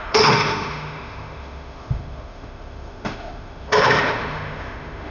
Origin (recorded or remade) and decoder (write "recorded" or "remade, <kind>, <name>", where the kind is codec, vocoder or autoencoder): remade, autoencoder, DAC-VAE